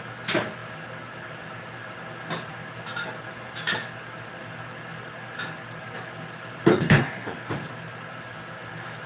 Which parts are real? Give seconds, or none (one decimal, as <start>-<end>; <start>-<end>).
0.0-6.7; 7.5-9.1